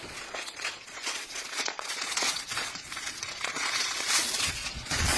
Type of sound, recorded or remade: remade